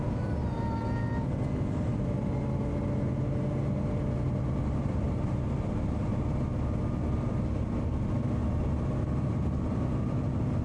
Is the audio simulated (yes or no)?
no